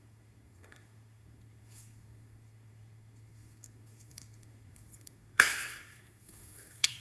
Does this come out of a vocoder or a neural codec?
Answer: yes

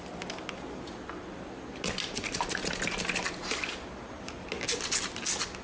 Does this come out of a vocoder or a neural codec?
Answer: no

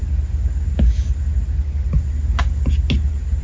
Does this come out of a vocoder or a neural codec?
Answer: no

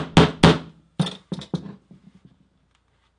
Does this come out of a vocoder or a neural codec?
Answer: no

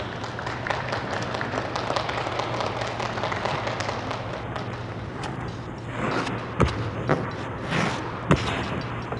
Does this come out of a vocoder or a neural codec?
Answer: no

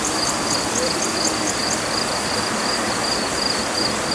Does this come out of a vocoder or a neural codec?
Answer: yes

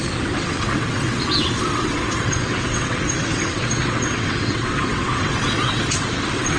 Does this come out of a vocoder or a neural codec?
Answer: yes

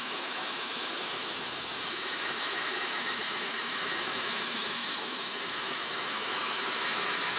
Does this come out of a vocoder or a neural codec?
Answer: yes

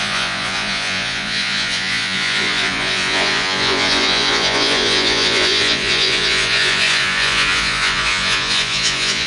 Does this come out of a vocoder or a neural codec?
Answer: yes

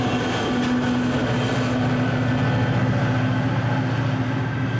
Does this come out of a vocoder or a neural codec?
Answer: no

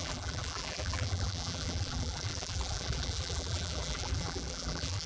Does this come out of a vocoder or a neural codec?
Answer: yes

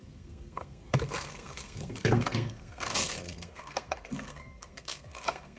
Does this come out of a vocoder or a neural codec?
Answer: yes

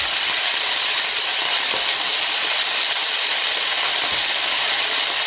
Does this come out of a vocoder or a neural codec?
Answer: yes